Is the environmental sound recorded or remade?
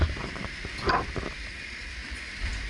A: remade